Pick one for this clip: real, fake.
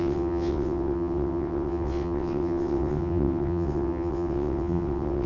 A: fake